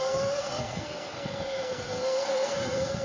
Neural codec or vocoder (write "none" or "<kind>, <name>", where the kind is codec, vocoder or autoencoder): codec, SNAC